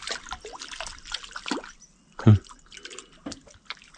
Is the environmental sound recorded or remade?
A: recorded